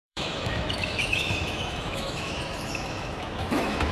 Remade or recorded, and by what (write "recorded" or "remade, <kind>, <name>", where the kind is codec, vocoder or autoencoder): remade, autoencoder, DAC-VAE